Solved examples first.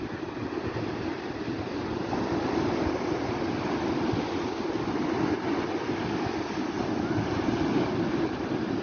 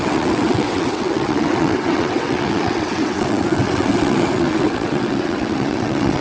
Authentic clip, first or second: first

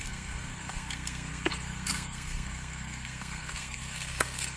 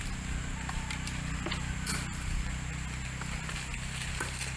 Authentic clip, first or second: second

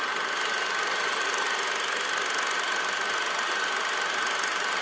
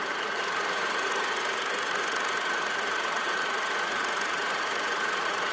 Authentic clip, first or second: first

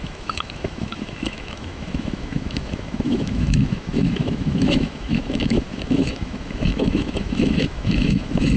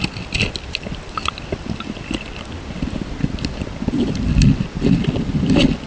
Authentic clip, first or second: second